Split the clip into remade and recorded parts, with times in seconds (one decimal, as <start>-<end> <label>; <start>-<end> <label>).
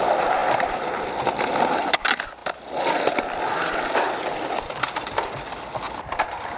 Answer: 0.0-6.6 remade